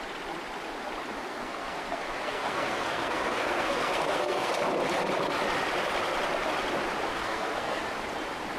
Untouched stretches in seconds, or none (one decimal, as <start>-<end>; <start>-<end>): 0.0-1.2; 4.5-7.1; 7.8-8.6